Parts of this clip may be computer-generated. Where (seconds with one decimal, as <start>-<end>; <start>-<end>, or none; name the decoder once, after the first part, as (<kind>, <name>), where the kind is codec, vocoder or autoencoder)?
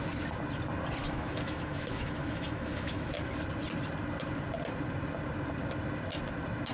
1.0-3.1 (autoencoder, DAC-VAE)